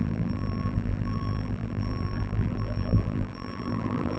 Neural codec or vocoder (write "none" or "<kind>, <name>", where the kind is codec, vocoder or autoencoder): vocoder, BigVGAN v2